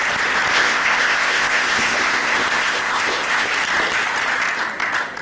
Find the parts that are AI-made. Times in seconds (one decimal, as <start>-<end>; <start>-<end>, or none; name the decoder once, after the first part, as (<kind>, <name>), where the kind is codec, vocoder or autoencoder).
0.5-3.5 (codec, ZipCodec)